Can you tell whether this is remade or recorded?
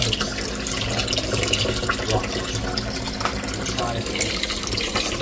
recorded